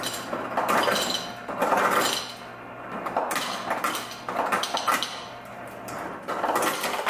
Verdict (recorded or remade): recorded